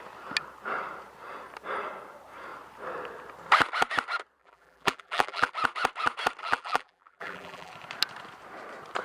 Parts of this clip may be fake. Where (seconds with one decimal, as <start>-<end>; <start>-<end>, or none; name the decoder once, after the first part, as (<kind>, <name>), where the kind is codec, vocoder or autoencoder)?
4.4-5.5 (vocoder, BigVGAN v2); 6.4-7.7